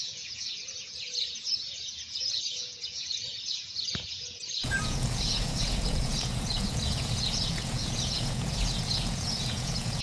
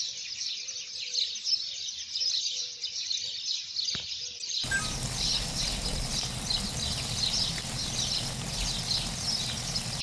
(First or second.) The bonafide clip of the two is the second